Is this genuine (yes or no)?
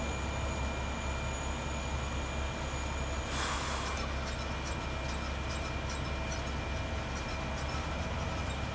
yes